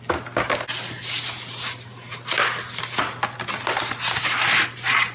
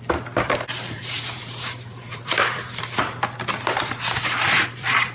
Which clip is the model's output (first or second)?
second